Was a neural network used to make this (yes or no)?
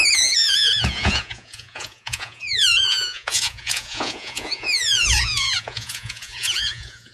yes